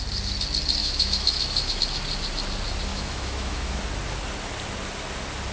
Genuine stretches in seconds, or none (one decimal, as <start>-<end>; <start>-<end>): 0.0-0.8; 1.8-2.9; 3.8-5.5